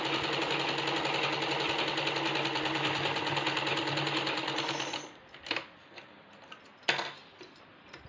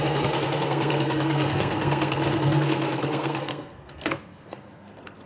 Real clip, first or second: first